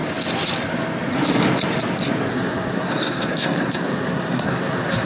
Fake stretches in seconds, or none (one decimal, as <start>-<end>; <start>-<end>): 2.3-5.1